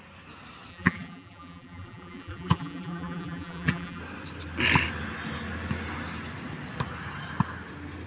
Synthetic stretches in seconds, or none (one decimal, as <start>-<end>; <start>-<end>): 0.7-4.0